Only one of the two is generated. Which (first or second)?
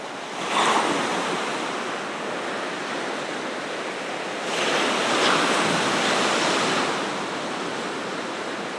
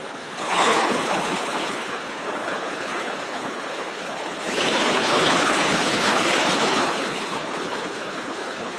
second